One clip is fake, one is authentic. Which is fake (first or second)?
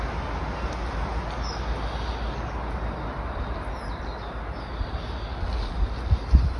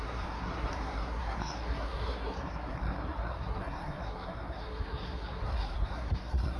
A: second